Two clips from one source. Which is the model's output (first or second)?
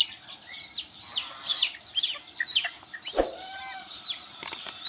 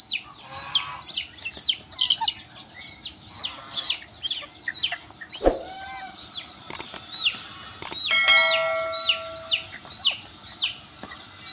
first